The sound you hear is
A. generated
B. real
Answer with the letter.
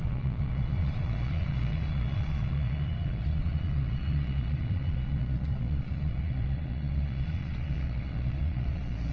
A